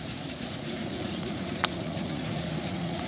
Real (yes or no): no